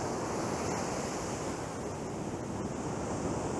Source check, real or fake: real